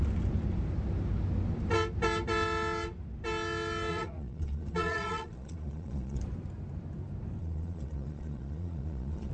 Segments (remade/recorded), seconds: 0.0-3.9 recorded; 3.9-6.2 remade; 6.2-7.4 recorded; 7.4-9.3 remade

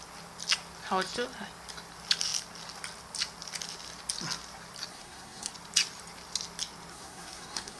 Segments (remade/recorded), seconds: 0.0-4.9 recorded; 4.9-5.5 remade; 5.5-6.9 recorded; 6.9-7.8 remade

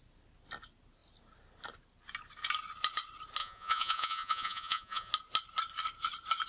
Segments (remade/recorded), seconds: 0.0-3.4 recorded; 3.4-5.1 remade; 5.1-6.5 recorded

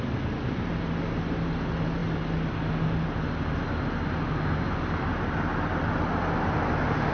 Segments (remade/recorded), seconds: 0.0-7.1 recorded

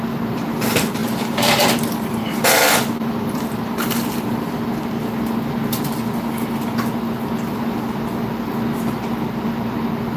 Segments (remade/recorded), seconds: 0.0-1.0 recorded; 1.0-4.7 remade; 4.7-10.2 recorded

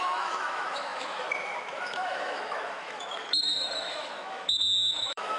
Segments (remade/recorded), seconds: 0.0-5.4 remade